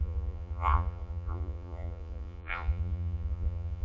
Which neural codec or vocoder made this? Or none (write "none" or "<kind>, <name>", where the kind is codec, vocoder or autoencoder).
vocoder, Vocos